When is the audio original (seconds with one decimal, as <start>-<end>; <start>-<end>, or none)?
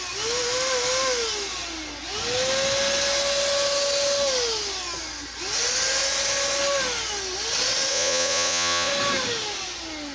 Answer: 0.0-7.9; 8.9-10.1